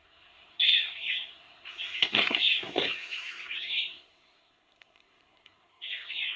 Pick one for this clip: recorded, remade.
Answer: remade